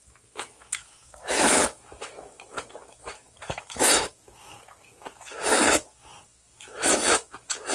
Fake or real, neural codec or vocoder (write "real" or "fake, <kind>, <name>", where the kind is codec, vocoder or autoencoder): fake, autoencoder, DAC-VAE